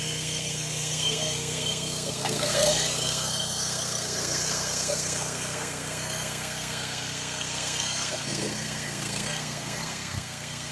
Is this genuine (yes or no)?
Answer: no